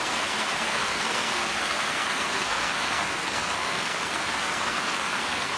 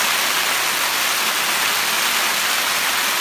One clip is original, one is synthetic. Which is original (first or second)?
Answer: second